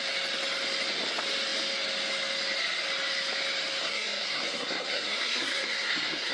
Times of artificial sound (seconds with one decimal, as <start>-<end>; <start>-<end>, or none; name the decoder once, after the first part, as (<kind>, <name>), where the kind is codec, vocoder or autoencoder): 3.8-6.3 (codec, SNAC)